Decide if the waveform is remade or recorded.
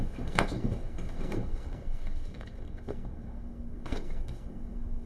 remade